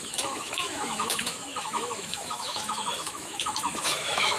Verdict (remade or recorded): remade